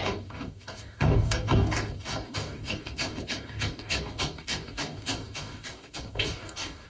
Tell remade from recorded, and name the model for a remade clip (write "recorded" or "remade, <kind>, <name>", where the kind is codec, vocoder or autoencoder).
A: remade, codec, DAC